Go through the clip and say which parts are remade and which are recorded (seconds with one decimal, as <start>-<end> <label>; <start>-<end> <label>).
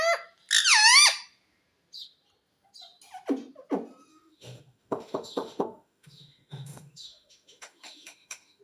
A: 0.0-4.1 recorded; 4.1-8.6 remade